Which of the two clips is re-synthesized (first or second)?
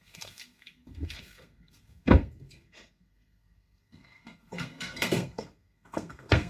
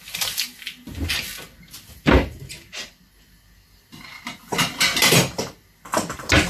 first